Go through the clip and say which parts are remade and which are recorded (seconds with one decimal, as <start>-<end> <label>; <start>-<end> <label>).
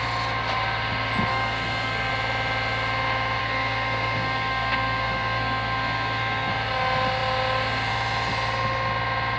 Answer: 0.0-1.3 recorded; 1.3-2.1 remade; 2.1-3.4 recorded; 3.4-6.5 remade; 6.5-9.4 recorded